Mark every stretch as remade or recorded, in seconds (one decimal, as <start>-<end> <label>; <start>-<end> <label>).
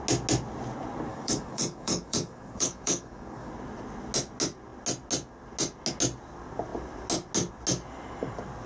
0.0-1.1 recorded; 1.1-3.5 remade; 3.5-8.7 recorded